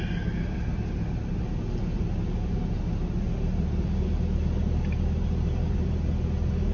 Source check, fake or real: real